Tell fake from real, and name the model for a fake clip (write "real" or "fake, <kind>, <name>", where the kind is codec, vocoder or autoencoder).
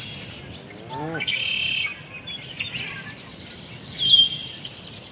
real